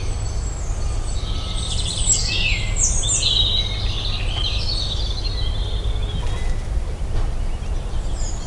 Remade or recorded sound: recorded